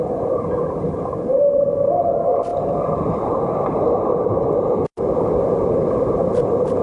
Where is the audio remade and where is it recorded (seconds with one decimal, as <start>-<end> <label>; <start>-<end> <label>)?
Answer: 0.0-6.8 recorded